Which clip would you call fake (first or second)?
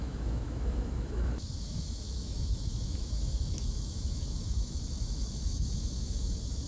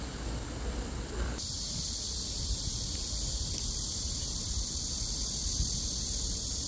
first